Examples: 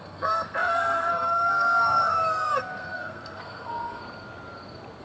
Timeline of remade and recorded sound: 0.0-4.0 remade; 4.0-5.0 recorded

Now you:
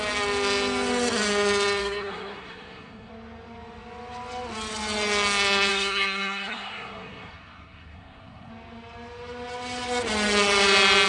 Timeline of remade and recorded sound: 0.0-1.8 recorded; 1.8-3.1 remade; 3.1-5.7 recorded; 5.7-8.5 remade; 8.5-11.1 recorded